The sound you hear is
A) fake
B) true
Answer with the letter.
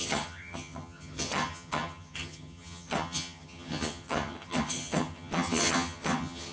A